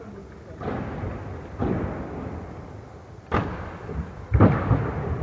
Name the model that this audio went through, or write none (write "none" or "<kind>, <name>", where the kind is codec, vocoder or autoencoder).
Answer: none